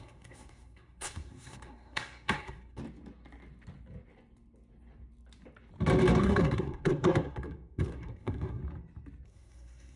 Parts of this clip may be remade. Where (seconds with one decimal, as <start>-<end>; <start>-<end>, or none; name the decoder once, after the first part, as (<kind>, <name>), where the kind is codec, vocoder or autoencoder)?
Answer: 0.0-2.8 (codec, SNAC); 6.2-8.6; 9.3-10.0